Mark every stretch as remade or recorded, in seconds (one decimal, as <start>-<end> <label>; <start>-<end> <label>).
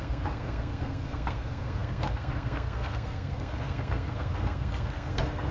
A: 0.0-5.5 remade